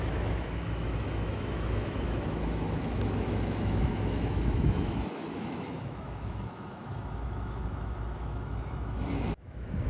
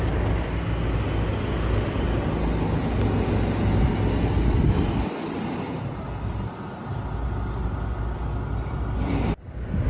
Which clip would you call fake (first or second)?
first